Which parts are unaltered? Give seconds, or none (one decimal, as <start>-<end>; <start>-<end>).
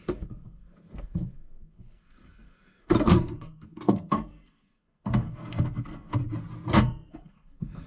6.2-7.1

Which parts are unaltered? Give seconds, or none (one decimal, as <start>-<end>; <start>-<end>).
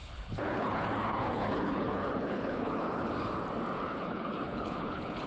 3.1-3.9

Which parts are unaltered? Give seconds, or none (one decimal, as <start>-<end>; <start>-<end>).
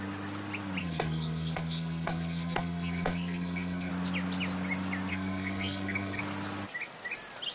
0.0-0.8; 3.9-5.1; 6.2-7.5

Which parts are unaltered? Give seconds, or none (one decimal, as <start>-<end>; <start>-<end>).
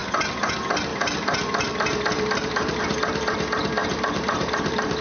0.0-0.9; 2.8-3.8